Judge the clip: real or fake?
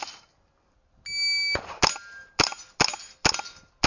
real